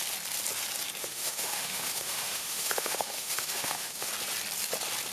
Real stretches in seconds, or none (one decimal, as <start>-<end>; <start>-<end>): 0.0-1.0; 4.1-5.1